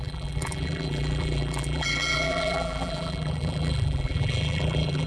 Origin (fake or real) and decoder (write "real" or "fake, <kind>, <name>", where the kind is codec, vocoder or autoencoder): fake, vocoder, BigVGAN v2